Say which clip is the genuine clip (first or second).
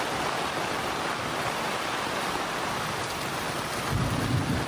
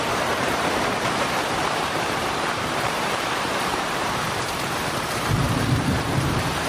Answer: first